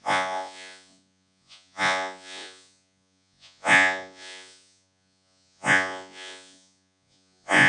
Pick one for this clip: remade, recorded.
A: remade